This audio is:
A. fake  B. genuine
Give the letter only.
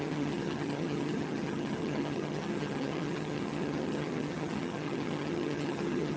A